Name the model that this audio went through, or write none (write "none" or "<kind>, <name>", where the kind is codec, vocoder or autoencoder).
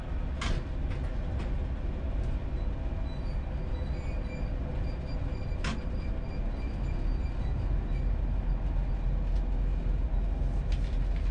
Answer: none